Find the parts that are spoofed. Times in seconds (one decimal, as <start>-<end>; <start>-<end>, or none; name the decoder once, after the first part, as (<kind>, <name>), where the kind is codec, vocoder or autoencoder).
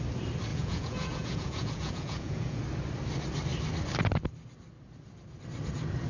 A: 0.5-2.6 (vocoder, Vocos)